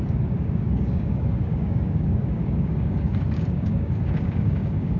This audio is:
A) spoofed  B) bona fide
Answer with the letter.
A